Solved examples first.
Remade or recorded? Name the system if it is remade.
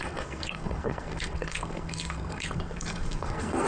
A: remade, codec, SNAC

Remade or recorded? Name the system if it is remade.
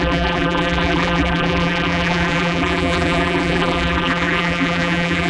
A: remade, vocoder, BigVGAN v2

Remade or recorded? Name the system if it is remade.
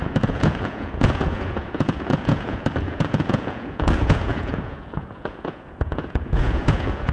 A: remade, vocoder, Vocos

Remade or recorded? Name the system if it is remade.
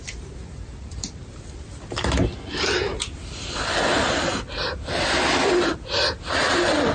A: recorded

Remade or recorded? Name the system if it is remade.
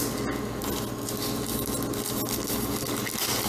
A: recorded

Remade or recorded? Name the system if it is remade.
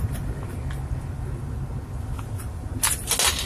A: recorded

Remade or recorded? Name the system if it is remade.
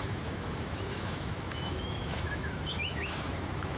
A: remade, autoencoder, DAC-VAE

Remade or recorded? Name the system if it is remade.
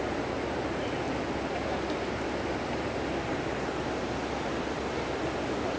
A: recorded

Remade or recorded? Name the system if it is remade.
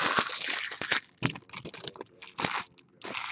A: recorded